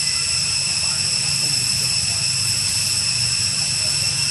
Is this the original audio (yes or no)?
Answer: yes